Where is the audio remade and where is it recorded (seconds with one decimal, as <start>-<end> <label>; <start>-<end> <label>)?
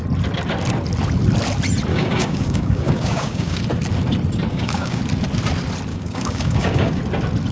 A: 0.0-1.9 recorded; 1.9-3.6 remade; 3.6-4.5 recorded; 4.5-5.0 remade; 5.0-5.9 recorded; 5.9-7.0 remade; 7.0-7.5 recorded